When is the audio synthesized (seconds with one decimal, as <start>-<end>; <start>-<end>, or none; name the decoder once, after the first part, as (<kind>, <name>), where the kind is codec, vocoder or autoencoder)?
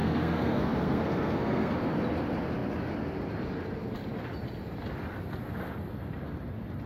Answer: 0.0-1.9 (codec, SNAC)